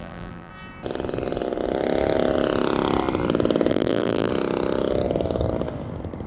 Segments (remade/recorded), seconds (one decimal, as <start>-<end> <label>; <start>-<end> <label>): 0.0-0.5 remade; 0.5-3.7 recorded; 3.7-4.3 remade; 4.3-6.3 recorded